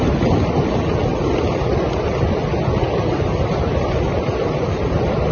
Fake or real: real